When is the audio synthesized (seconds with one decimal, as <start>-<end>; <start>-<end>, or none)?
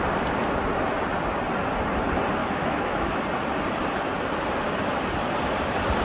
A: 2.4-3.2